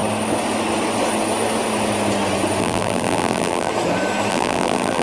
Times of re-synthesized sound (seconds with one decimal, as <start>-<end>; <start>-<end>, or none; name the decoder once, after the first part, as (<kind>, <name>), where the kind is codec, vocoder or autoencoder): 2.6-3.7 (vocoder, BigVGAN v2); 4.3-5.0